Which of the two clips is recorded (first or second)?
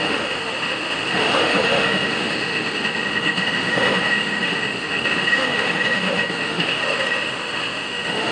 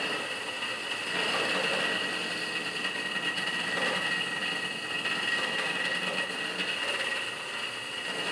second